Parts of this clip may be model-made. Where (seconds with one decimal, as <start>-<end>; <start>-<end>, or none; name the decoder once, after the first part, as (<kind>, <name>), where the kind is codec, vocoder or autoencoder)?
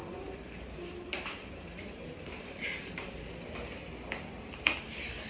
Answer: 0.0-3.2 (vocoder, BigVGAN v2)